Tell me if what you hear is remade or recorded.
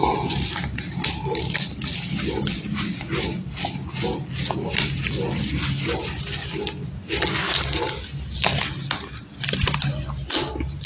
recorded